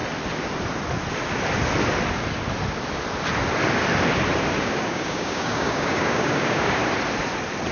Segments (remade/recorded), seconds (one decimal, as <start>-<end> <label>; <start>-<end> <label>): 0.0-4.6 recorded; 4.6-6.8 remade; 6.8-7.7 recorded